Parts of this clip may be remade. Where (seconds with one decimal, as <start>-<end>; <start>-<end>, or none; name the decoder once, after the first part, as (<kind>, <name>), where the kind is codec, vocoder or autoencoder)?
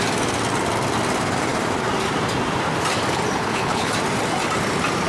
3.4-3.9 (codec, HILCodec)